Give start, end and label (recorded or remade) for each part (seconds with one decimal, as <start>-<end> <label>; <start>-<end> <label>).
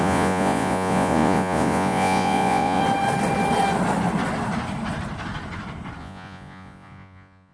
0.0-2.8 remade; 2.8-6.0 recorded; 6.0-7.5 remade